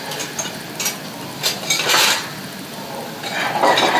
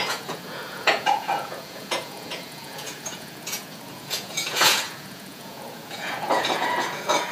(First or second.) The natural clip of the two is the first